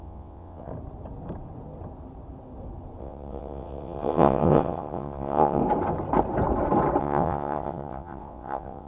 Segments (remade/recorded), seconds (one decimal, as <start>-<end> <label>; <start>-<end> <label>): 0.0-0.7 remade; 0.7-3.0 recorded; 3.0-5.6 remade; 5.6-7.0 recorded; 7.0-8.9 remade

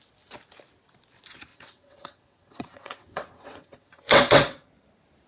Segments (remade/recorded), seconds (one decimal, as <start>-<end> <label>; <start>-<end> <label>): 0.0-1.5 recorded; 1.5-4.7 remade; 4.7-5.3 recorded

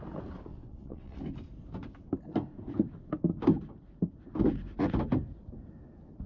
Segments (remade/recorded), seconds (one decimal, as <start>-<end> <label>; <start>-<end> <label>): 0.0-0.5 recorded; 0.5-1.2 remade; 1.2-6.3 recorded

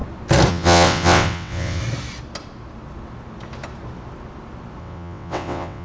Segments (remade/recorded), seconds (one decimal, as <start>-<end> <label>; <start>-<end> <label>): 0.0-0.5 recorded; 0.5-1.8 remade; 1.8-4.8 recorded; 4.8-5.8 remade

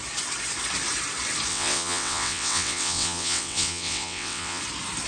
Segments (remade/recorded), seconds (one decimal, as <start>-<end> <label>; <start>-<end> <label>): 0.0-1.5 recorded; 1.5-4.6 remade; 4.6-5.1 recorded